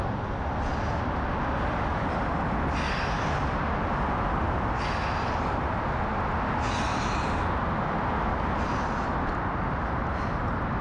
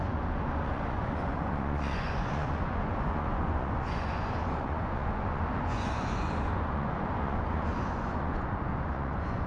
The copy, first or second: second